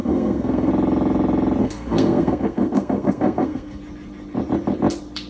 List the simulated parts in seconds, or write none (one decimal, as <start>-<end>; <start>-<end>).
0.0-0.7; 1.6-3.8